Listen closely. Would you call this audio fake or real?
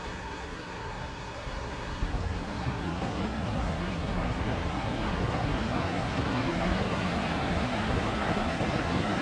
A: fake